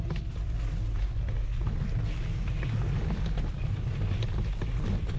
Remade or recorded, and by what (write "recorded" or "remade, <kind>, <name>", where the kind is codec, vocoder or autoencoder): recorded